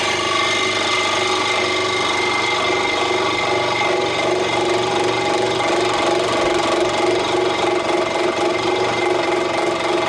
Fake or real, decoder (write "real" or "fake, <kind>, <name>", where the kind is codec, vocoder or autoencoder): real